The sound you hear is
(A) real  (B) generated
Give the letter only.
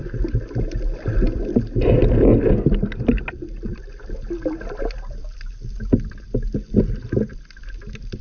A